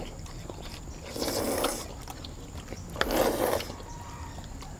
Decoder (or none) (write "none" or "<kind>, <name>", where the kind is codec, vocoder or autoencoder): none